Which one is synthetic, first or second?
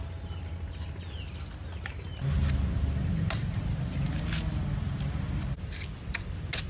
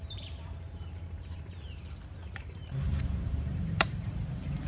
second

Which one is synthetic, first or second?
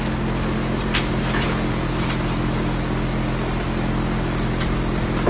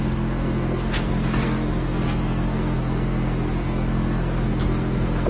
second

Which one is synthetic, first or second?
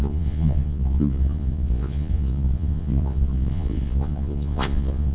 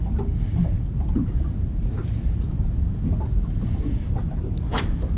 first